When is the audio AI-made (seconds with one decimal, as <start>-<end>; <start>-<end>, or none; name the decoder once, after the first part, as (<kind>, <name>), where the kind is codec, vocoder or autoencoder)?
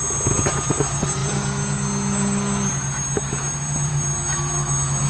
none